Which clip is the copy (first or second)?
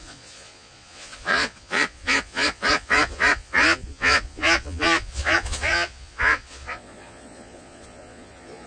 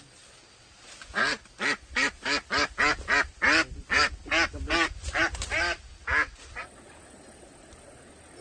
first